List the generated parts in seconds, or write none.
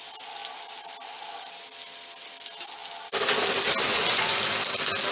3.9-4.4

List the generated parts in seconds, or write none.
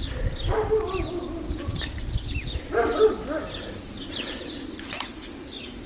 none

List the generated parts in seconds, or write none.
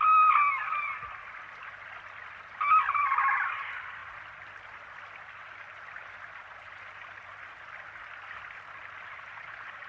none